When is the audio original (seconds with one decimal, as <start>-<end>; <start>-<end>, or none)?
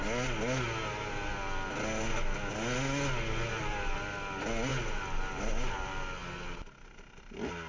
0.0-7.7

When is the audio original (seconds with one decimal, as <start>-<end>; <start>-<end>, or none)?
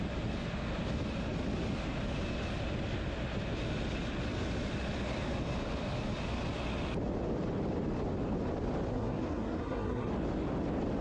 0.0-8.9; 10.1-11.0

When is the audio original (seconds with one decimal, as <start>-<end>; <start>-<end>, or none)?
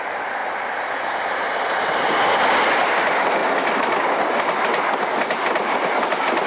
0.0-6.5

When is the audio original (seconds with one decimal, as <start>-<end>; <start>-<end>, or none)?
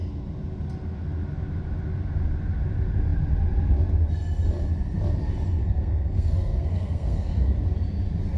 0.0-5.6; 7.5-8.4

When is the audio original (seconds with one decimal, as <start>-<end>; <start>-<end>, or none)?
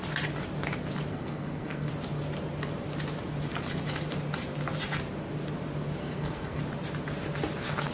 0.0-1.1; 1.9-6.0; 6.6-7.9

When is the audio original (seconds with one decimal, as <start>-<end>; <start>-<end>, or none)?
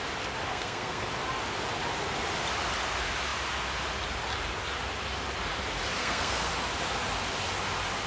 0.0-0.5; 1.1-6.0; 6.5-8.1